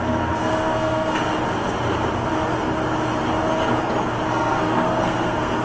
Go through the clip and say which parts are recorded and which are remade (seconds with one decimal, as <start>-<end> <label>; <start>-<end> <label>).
0.0-1.2 remade; 1.2-4.3 recorded; 4.3-5.6 remade